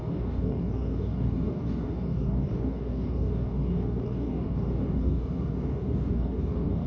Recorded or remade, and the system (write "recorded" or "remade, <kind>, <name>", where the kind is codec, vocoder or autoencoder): remade, codec, DAC